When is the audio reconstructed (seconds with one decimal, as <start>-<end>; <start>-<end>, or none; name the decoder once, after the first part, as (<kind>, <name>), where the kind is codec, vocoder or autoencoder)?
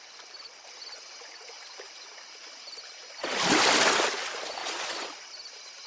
4.6-5.1 (vocoder, Vocos)